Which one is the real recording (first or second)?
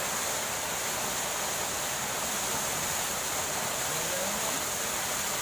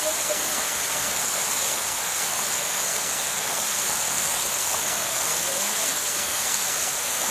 first